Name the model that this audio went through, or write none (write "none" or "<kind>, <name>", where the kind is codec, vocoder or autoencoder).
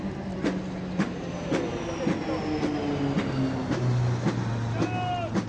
none